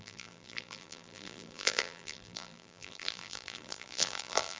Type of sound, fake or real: fake